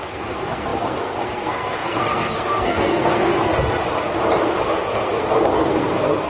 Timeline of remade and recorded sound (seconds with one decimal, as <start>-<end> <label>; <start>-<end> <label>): 0.0-3.3 remade; 3.3-4.4 recorded; 4.4-6.3 remade